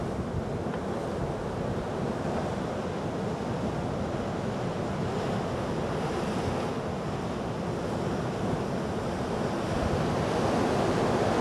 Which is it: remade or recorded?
recorded